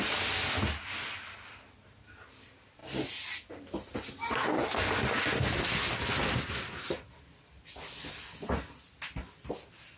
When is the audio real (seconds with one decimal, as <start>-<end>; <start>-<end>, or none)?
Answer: 0.0-10.0